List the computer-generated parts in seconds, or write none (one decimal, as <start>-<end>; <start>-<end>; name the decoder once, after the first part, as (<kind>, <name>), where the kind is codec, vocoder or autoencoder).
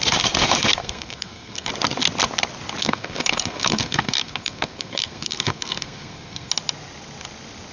0.8-1.7 (codec, SNAC); 2.8-6.5